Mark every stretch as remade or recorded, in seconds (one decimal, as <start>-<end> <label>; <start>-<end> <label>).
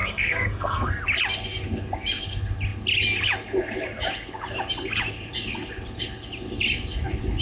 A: 0.0-0.9 remade; 0.9-7.4 recorded